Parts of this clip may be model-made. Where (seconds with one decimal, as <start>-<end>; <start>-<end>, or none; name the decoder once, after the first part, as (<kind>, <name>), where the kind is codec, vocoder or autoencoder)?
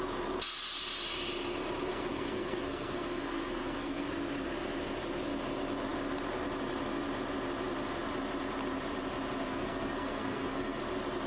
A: 1.9-4.1 (codec, SNAC); 9.5-10.8